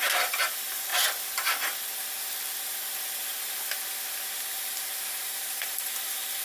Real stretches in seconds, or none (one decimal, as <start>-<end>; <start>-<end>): 0.9-4.4